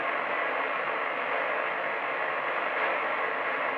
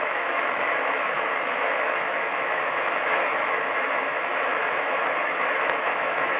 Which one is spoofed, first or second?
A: second